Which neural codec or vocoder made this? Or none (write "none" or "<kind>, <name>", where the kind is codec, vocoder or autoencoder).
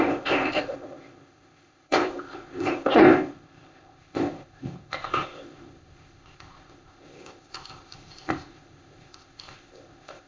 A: codec, ZipCodec